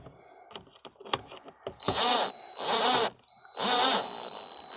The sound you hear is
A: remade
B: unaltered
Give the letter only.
B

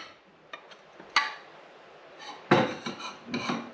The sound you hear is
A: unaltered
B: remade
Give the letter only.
A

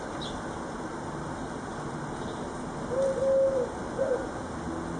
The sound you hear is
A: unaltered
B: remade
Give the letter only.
A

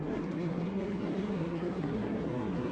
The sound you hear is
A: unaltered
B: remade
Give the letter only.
B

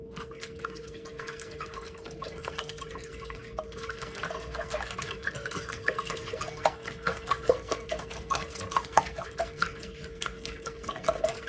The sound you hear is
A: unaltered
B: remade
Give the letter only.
B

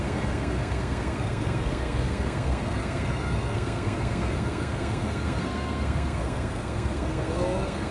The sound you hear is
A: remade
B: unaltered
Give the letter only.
A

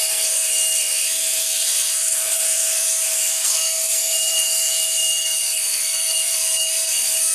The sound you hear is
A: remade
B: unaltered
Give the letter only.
A